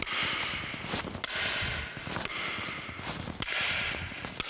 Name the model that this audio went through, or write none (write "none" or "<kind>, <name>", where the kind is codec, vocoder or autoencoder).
none